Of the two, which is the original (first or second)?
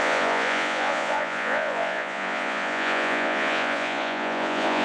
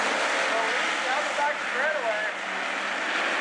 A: second